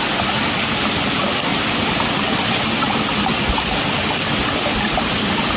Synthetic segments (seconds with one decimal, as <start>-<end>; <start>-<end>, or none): none